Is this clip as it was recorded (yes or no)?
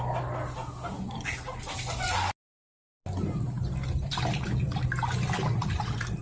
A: yes